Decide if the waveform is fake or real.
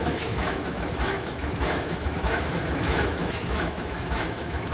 fake